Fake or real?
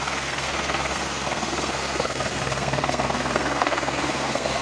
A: fake